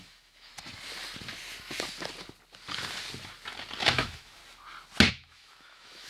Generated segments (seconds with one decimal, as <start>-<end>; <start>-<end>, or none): 0.0-0.5; 3.8-4.4; 5.1-6.1